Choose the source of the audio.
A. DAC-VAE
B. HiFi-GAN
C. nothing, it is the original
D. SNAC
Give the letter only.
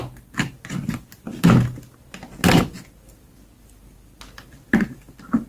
C